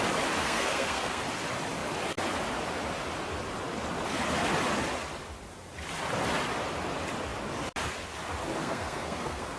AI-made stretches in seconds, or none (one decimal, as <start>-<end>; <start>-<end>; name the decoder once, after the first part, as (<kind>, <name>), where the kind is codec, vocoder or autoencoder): 0.4-1.2 (codec, SNAC); 8.6-9.6